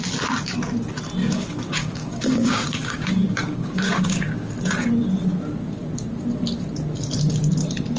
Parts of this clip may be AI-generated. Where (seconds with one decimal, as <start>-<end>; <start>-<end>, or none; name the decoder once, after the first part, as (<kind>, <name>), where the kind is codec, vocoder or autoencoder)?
1.2-4.5 (codec, DAC)